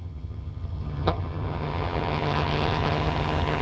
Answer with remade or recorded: remade